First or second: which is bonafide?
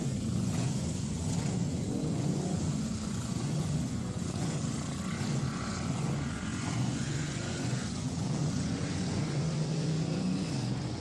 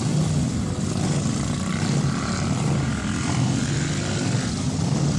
second